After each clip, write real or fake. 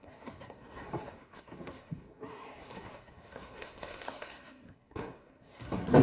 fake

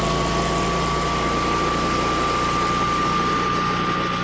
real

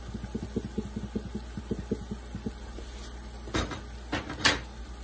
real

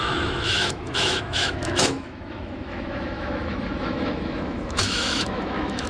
fake